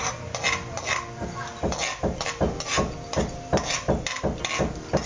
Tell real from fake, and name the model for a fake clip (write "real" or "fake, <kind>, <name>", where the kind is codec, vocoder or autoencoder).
real